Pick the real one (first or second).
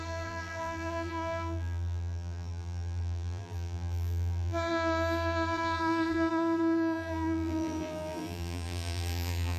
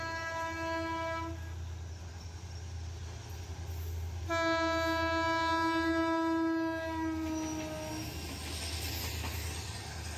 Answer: second